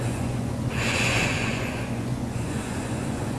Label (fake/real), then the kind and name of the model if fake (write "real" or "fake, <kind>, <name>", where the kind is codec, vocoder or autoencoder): fake, vocoder, Vocos